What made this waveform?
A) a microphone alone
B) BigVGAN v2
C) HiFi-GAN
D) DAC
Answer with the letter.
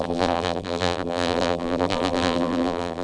B